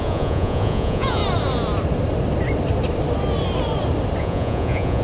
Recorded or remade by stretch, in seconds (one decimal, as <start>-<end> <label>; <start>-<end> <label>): 0.0-1.2 remade; 1.2-4.2 recorded; 4.2-5.0 remade

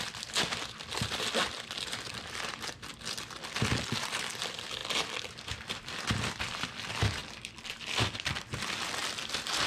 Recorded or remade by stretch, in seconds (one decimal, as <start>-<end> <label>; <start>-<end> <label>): 0.0-4.8 remade; 4.8-5.7 recorded; 5.7-9.7 remade

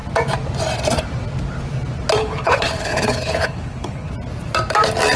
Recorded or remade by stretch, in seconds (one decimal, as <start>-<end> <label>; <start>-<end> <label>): 0.0-2.2 recorded; 2.2-4.1 remade; 4.1-5.2 recorded

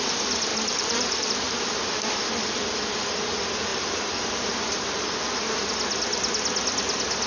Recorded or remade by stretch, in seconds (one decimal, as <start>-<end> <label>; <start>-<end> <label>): 0.0-0.5 recorded; 0.5-1.3 remade; 1.3-3.7 recorded; 3.7-4.5 remade; 4.5-7.3 recorded